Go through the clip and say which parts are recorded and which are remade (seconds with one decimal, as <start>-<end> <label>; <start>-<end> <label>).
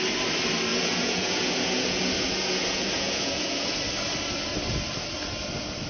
0.0-0.7 recorded; 0.7-3.8 remade; 3.8-5.9 recorded